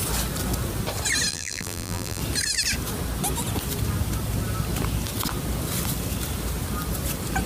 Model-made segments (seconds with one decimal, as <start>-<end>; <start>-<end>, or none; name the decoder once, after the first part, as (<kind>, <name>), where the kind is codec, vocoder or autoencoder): 1.3-2.2 (vocoder, BigVGAN v2)